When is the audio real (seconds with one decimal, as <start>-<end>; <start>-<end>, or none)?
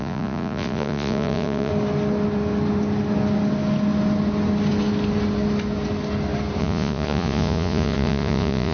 1.7-6.6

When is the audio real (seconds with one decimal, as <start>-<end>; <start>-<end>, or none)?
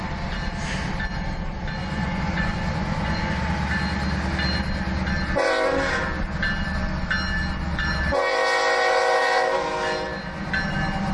0.0-1.8; 3.3-11.1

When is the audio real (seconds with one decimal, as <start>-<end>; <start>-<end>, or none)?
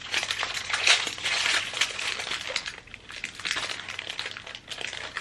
2.1-5.2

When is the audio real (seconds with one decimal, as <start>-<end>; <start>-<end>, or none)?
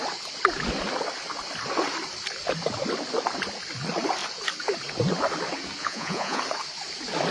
0.0-5.8; 6.4-7.3